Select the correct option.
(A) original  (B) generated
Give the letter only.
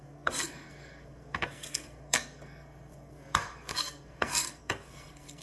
B